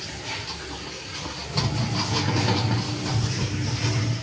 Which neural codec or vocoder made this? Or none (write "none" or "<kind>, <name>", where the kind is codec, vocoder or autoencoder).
none